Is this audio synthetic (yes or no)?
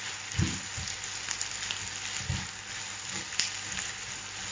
no